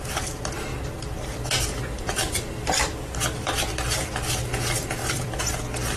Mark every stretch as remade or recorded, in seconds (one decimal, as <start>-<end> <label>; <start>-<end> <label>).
0.0-0.7 recorded; 0.7-3.7 remade; 3.7-5.0 recorded; 5.0-5.5 remade; 5.5-6.0 recorded